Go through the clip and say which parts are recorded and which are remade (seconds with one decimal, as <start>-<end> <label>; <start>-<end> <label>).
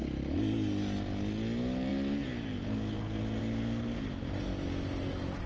0.0-5.5 recorded